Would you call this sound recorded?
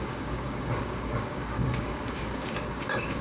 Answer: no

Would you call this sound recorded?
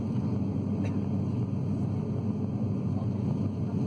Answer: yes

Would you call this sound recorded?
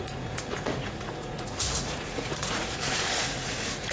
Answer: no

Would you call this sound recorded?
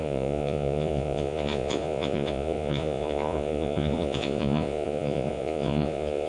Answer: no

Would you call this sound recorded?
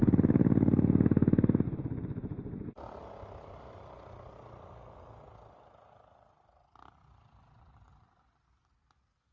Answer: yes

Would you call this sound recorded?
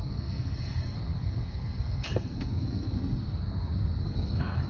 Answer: no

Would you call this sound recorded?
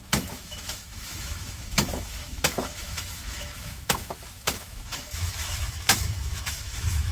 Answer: no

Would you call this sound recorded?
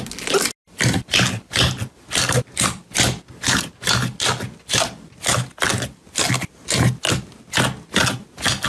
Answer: yes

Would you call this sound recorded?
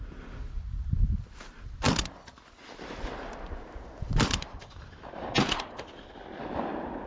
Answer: yes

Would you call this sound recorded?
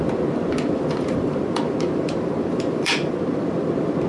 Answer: no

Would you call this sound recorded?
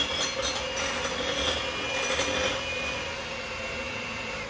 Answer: yes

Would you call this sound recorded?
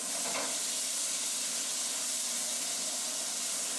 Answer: yes